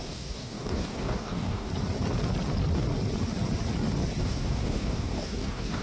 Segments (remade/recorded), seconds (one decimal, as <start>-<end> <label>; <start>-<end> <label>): 0.0-1.7 remade; 1.7-4.2 recorded; 4.2-5.8 remade